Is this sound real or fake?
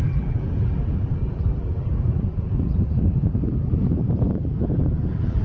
fake